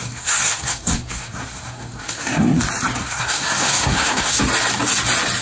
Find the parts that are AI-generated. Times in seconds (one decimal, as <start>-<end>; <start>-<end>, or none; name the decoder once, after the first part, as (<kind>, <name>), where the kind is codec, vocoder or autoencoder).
0.0-2.6 (codec, SNAC); 3.0-4.4